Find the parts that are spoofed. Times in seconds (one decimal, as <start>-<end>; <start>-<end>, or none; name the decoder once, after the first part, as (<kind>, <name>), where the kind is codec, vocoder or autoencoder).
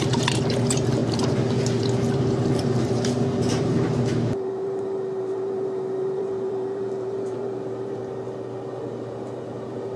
0.0-8.0 (vocoder, BigVGAN v2); 8.7-10.0